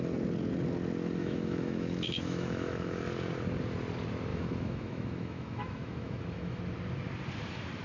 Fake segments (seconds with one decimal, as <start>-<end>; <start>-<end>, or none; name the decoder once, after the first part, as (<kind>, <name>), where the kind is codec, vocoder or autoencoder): 1.2-3.0 (autoencoder, DAC-VAE); 4.3-6.6

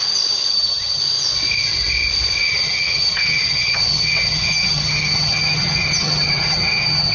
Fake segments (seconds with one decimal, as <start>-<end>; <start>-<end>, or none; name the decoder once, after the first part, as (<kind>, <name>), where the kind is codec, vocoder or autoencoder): 0.5-1.0 (vocoder, HiFi-GAN); 2.4-7.1

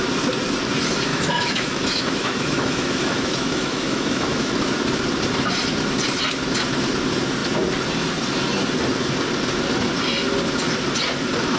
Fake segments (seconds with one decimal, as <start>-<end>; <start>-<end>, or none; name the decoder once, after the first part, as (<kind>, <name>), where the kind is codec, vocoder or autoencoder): 1.1-4.5 (autoencoder, DAC-VAE)

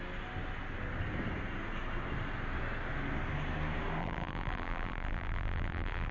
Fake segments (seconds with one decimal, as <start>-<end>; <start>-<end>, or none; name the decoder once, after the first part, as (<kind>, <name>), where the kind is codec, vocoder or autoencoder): 4.0-6.1 (vocoder, BigVGAN v2)

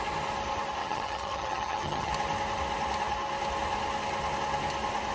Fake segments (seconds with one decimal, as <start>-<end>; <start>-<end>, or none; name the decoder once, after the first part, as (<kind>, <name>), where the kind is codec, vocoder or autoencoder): 0.8-2.1 (vocoder, HiFi-GAN)

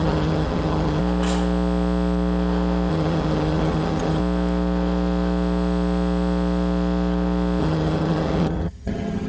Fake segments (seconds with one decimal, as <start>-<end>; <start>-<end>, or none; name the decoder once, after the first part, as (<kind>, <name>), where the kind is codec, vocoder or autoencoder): 0.0-1.0 (vocoder, HiFi-GAN); 2.9-4.2; 7.6-9.3